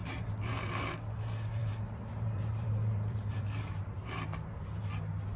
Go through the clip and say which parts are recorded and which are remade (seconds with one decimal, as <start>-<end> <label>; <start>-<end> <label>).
0.0-0.8 remade; 0.8-1.6 recorded; 1.6-4.8 remade; 4.8-5.4 recorded